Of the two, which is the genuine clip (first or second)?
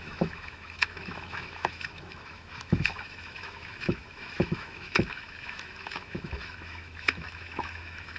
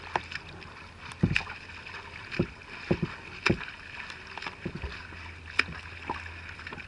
second